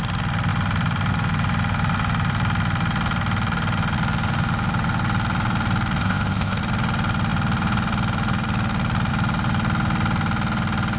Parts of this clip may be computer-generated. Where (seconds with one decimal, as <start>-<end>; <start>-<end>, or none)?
6.0-6.6